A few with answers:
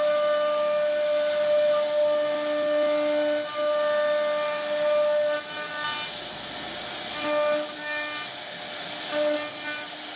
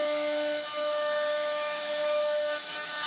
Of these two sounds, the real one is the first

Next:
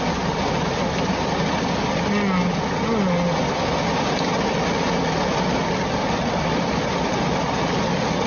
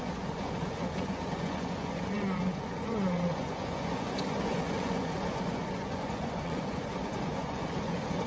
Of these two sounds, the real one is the first